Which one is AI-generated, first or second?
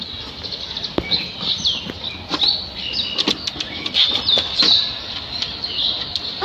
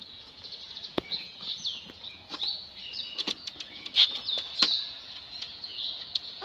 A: second